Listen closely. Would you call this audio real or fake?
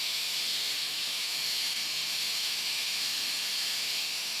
fake